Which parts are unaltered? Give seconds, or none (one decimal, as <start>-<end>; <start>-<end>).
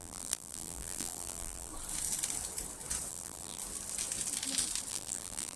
1.7-3.1; 3.6-4.9